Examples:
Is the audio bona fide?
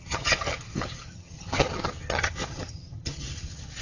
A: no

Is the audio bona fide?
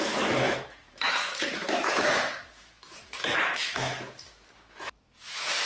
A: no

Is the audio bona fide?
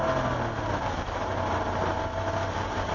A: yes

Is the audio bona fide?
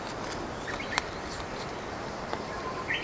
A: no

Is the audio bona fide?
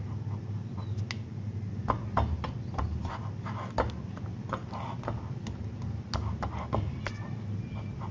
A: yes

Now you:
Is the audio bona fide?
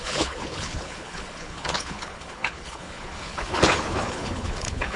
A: no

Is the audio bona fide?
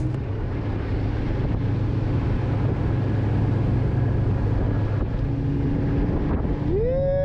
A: yes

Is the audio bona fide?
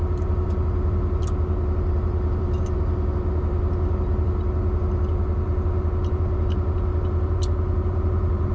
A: yes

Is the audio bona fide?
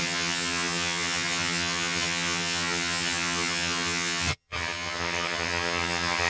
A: no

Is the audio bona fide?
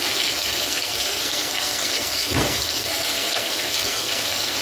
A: no